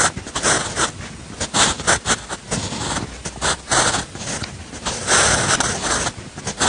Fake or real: real